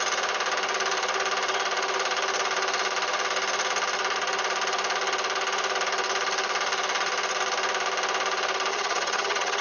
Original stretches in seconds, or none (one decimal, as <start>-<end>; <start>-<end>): 0.0-8.7